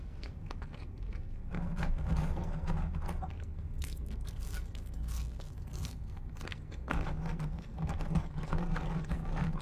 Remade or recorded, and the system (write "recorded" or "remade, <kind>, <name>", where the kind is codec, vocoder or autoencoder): remade, codec, SNAC